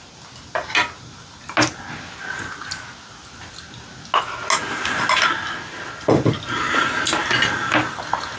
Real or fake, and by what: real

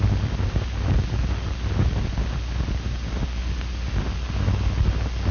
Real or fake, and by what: real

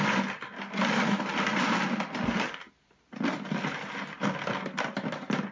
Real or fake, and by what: real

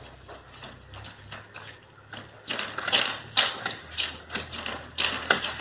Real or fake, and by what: real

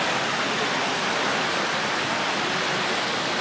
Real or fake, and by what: real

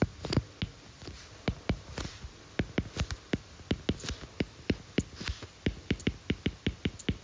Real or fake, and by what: real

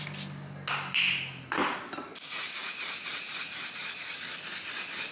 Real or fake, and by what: real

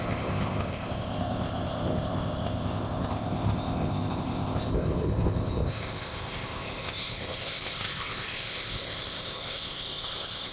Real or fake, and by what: fake, codec, ZipCodec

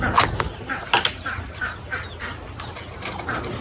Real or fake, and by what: real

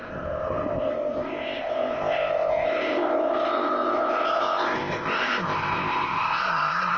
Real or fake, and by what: fake, codec, ZipCodec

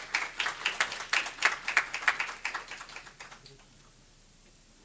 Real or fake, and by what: real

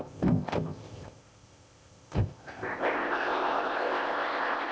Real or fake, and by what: fake, codec, ZipCodec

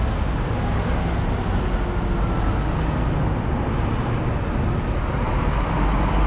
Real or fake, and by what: real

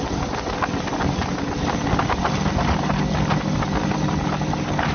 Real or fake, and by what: real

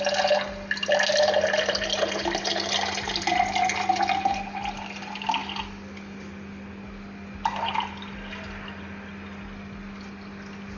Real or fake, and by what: real